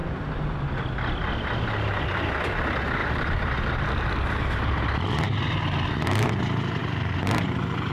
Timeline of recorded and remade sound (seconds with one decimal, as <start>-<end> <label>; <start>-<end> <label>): 0.0-3.0 recorded; 3.0-4.8 remade; 4.8-7.9 recorded